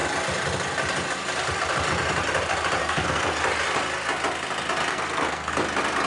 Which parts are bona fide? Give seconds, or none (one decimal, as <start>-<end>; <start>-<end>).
0.0-2.8; 3.3-4.9; 5.5-6.1